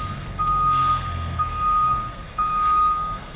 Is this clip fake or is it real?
fake